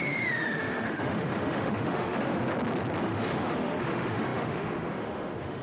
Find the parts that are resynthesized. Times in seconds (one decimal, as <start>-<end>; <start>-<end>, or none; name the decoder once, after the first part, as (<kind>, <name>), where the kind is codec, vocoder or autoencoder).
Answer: 0.0-2.5 (autoencoder, DAC-VAE); 3.0-5.6